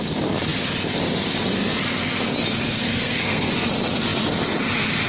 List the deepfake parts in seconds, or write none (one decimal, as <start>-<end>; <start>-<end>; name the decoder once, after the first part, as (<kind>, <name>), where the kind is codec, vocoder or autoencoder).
2.7-3.5 (codec, SNAC)